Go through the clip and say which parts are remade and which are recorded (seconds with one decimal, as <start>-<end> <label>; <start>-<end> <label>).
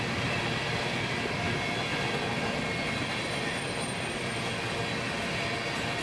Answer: 0.0-6.0 recorded